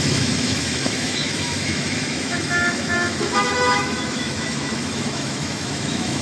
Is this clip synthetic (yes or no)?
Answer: yes